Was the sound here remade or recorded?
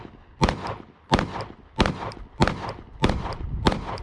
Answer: recorded